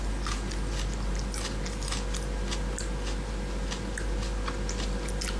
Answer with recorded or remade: recorded